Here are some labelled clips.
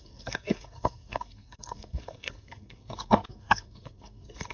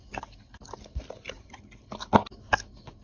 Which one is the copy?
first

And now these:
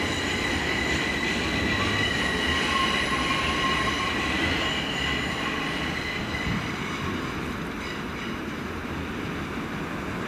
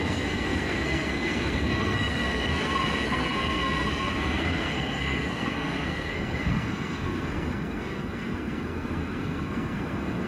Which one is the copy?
second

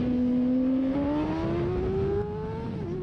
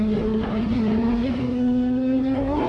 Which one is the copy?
second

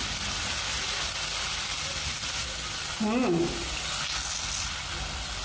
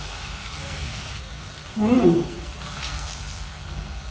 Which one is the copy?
second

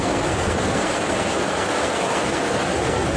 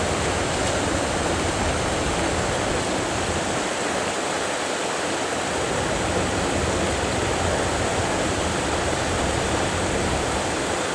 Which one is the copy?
first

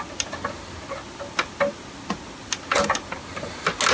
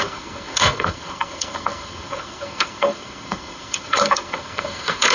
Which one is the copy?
second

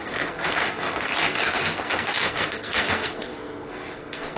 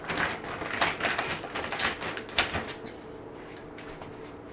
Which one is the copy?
first